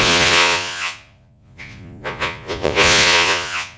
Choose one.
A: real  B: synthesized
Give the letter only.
B